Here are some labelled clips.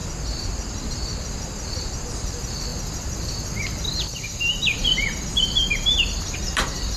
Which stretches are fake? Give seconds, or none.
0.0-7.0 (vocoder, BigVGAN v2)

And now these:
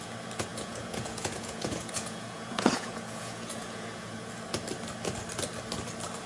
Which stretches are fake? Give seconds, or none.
0.5-4.3 (vocoder, Vocos)

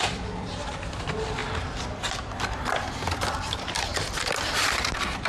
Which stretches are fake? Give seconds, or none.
0.0-1.4 (vocoder, BigVGAN v2); 2.6-5.3

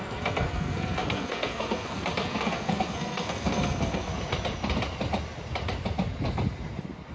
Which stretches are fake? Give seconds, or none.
0.0-4.1 (codec, SNAC)

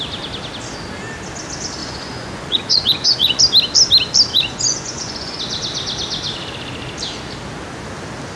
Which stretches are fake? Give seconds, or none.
1.8-3.4 (vocoder, Vocos); 4.3-5.4